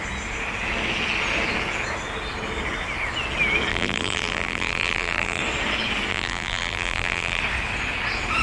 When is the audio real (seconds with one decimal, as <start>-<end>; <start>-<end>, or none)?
0.0-3.7; 5.4-6.1; 7.4-8.4

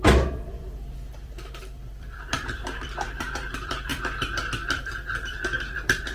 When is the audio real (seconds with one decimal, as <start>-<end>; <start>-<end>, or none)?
none

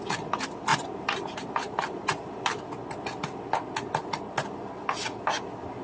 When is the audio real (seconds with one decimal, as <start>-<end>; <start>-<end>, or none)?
0.0-0.7; 2.6-5.8

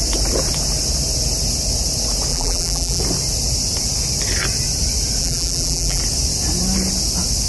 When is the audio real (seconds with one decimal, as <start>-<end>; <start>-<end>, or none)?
0.0-2.3; 3.0-5.2; 6.0-7.5

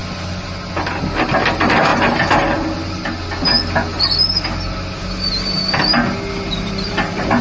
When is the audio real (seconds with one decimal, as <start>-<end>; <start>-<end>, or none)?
0.0-1.0; 1.9-6.3

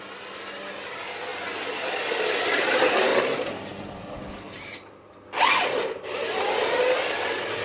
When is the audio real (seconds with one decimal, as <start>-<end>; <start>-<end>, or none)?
1.3-1.9